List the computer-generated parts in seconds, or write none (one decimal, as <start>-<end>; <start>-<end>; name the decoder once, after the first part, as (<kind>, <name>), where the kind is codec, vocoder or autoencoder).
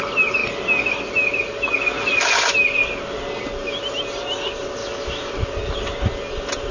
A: 4.8-5.3 (autoencoder, DAC-VAE)